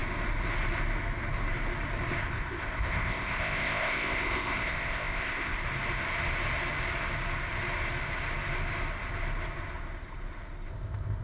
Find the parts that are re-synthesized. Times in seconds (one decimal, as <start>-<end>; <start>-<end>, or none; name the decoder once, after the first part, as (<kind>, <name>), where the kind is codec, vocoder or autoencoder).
2.2-5.6 (codec, ZipCodec); 10.7-11.2